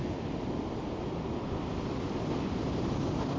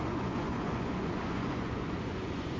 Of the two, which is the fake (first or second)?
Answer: second